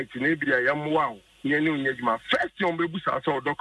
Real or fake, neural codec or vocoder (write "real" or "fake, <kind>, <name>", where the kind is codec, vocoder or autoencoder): real